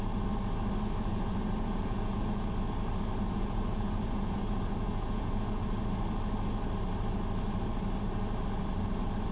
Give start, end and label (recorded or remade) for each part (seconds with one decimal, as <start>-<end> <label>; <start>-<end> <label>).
0.0-1.1 recorded; 1.1-2.5 remade; 2.5-3.3 recorded; 3.3-5.6 remade; 5.6-9.3 recorded